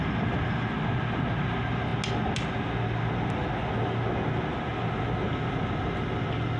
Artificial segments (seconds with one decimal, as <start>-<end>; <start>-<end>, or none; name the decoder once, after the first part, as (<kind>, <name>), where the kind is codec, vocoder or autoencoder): none